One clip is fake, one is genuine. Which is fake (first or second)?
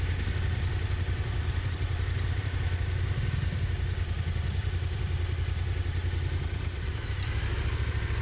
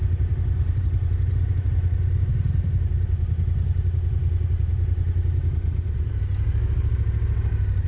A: first